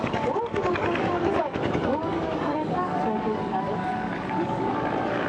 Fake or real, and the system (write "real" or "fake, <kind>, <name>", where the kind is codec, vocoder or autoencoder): fake, codec, DAC